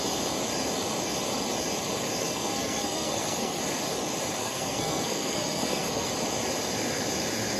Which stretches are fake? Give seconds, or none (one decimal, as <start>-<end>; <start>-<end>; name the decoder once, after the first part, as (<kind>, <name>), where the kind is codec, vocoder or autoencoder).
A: 2.2-3.6 (codec, SNAC); 4.4-6.1